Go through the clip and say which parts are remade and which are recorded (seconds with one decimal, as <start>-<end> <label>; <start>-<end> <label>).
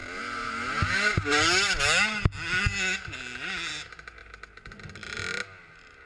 0.0-6.1 recorded